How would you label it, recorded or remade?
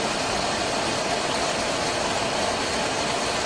recorded